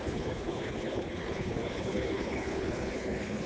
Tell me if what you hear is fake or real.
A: fake